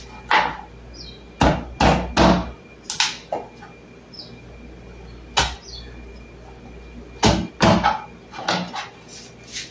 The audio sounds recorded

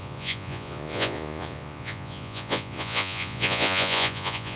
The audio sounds remade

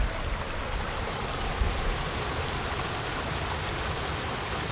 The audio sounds recorded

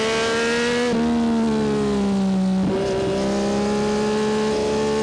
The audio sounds recorded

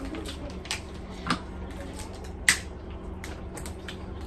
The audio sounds recorded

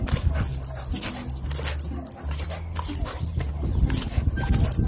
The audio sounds recorded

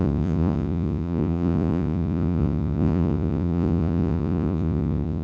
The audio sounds remade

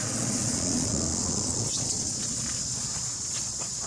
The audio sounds remade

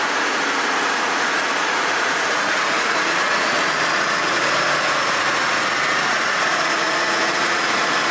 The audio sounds remade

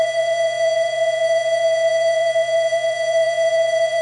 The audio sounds remade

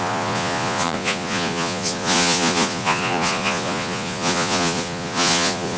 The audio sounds remade